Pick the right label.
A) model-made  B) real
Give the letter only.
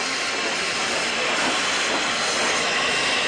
B